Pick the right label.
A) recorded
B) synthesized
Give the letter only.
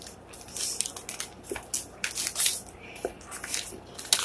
A